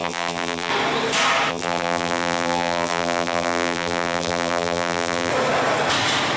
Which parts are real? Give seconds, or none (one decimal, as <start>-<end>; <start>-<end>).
0.7-1.5; 5.3-6.4